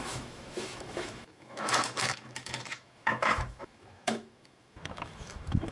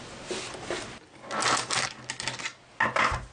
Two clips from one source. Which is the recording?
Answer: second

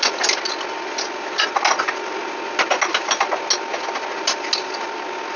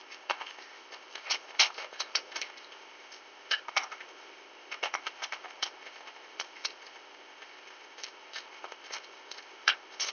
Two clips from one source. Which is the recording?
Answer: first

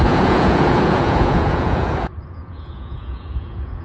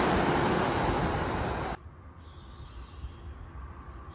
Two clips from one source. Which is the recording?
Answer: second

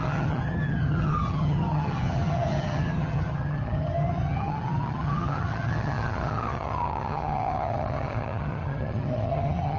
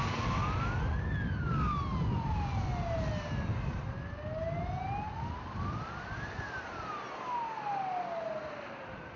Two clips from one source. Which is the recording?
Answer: second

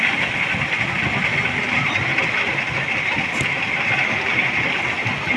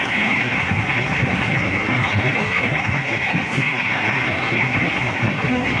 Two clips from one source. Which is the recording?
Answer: first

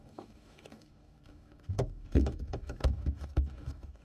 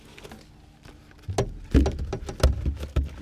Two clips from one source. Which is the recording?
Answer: second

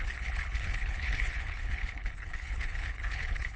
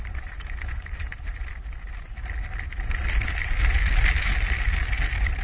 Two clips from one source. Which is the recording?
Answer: second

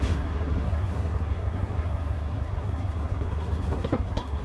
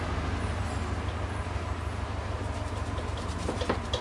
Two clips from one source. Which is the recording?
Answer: second